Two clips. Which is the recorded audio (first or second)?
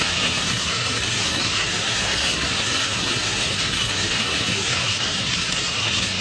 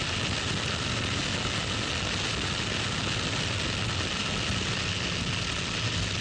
second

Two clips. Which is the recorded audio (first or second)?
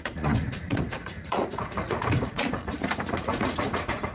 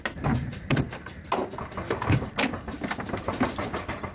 second